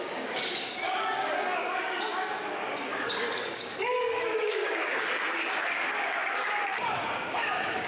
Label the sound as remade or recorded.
remade